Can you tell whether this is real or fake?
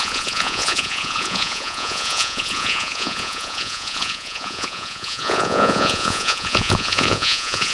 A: fake